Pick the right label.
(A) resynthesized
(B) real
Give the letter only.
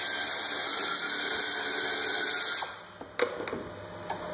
B